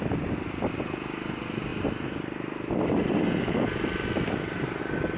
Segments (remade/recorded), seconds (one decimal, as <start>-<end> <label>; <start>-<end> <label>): 0.0-5.2 recorded